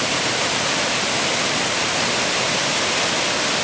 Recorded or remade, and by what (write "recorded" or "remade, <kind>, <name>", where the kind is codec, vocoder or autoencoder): recorded